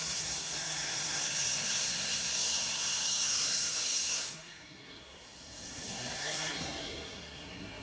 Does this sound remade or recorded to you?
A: remade